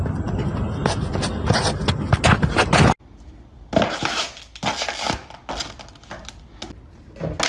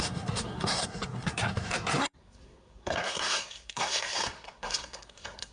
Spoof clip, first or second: second